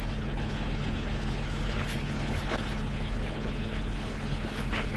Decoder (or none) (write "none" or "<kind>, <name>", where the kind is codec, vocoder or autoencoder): codec, HILCodec